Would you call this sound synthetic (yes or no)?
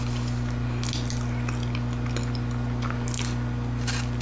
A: no